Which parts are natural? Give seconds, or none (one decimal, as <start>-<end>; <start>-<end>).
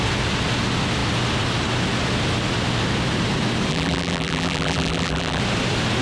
0.0-3.7; 5.4-6.0